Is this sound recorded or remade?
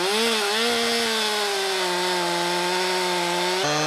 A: recorded